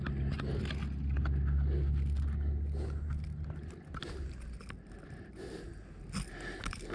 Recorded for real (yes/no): yes